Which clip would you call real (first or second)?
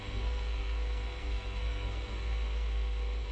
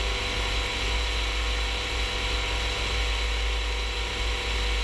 second